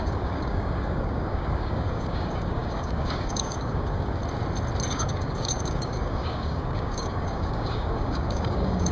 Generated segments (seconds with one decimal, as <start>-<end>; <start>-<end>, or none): 0.0-4.2; 4.9-8.9